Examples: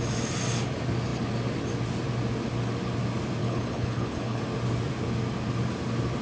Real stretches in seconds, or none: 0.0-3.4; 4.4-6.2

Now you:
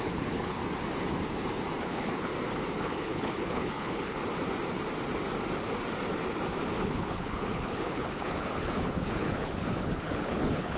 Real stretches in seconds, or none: 0.6-1.8; 2.3-2.8; 4.2-6.8

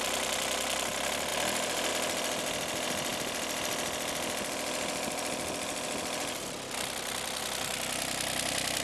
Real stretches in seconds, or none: 0.0-8.8

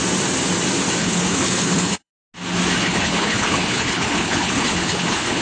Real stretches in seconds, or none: 0.0-1.0; 2.1-2.8

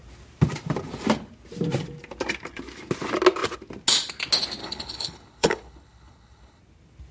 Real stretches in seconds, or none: 0.0-4.6; 6.6-7.1

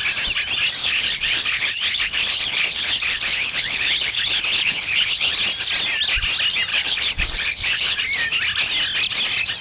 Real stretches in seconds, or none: 0.0-0.8; 5.4-6.7; 8.0-9.6

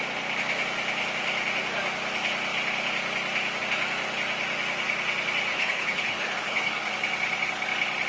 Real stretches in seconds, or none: 0.0-5.5; 6.9-8.1

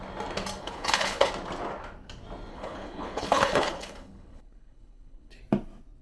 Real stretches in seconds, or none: 0.0-0.6; 1.3-2.5; 5.3-6.0